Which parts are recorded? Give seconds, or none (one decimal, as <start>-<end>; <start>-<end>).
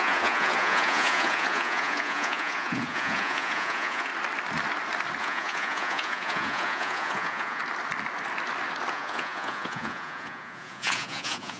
4.1-5.2; 7.6-8.9